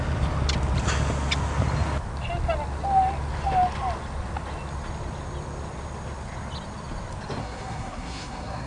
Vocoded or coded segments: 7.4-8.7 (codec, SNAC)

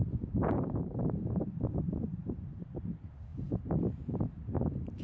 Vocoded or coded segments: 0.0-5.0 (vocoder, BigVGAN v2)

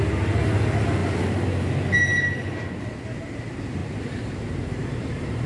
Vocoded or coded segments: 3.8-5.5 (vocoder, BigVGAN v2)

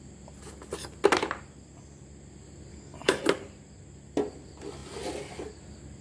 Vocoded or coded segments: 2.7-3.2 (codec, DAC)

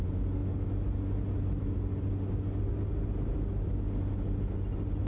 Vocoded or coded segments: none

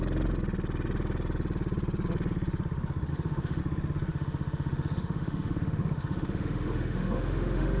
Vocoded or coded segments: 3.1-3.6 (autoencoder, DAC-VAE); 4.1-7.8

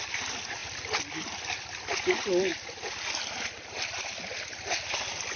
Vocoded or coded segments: none